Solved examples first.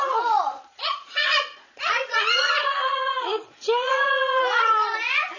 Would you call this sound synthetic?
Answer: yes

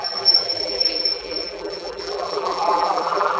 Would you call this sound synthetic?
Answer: yes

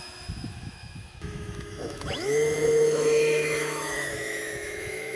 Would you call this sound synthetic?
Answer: yes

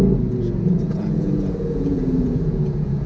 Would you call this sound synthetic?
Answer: yes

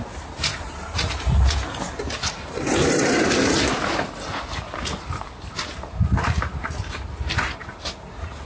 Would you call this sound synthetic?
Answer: yes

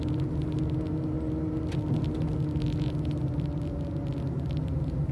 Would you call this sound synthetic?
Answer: no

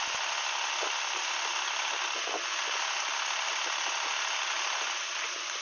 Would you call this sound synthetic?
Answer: no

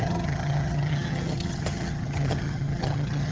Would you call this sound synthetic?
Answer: yes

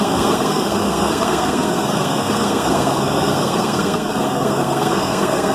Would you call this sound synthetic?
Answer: yes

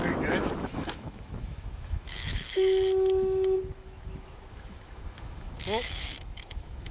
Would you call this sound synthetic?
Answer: yes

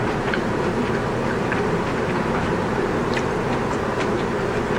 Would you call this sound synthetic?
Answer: yes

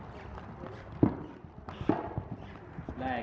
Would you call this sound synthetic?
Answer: no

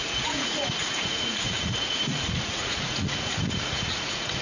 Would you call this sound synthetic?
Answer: yes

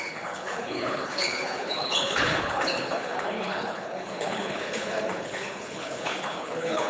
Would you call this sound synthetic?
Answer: yes